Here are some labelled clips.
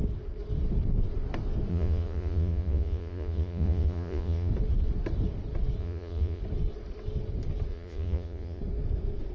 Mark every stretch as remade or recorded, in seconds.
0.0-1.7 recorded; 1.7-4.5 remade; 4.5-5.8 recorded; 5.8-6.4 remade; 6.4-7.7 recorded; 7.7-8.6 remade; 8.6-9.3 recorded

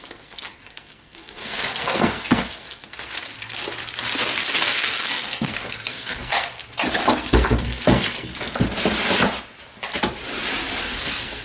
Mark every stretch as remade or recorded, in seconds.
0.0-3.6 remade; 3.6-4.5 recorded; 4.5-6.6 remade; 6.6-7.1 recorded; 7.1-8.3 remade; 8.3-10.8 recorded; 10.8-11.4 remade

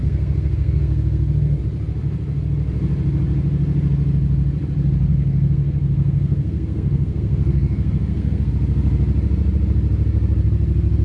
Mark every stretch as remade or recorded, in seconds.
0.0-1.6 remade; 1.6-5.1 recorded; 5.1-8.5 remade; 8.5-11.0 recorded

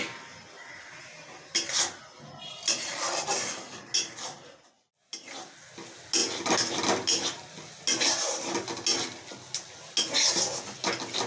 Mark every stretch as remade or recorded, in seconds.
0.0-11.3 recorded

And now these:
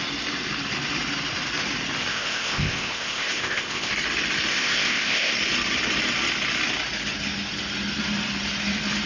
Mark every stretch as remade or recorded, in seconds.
0.0-2.1 recorded; 2.1-3.9 remade; 3.9-4.5 recorded; 4.5-5.3 remade; 5.3-9.1 recorded

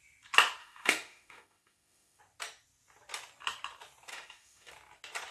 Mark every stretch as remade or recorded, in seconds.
0.0-0.6 recorded; 0.6-2.2 remade; 2.2-4.1 recorded; 4.1-4.7 remade; 4.7-5.3 recorded

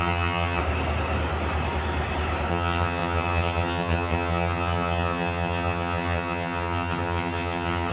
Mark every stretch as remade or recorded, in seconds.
0.0-0.6 remade; 0.6-2.5 recorded; 2.5-7.9 remade

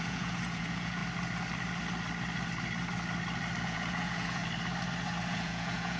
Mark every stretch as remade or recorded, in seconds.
0.0-1.0 remade; 1.0-3.6 recorded; 3.6-4.4 remade; 4.4-5.3 recorded; 5.3-6.0 remade